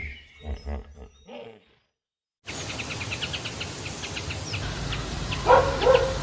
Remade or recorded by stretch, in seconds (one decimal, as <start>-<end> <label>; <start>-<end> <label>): 0.0-6.2 recorded